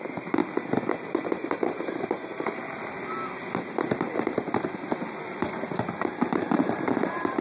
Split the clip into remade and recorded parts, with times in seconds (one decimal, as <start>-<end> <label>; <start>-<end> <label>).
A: 0.0-0.4 remade; 0.4-1.1 recorded; 1.1-2.6 remade; 2.6-3.9 recorded; 3.9-7.4 remade